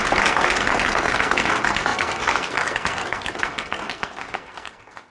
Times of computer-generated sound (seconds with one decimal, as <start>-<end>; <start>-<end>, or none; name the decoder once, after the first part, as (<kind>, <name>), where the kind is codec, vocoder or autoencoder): 0.0-5.1 (codec, SNAC)